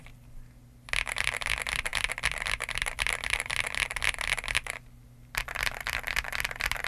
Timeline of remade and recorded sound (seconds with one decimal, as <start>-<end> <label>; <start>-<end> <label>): 0.0-6.9 recorded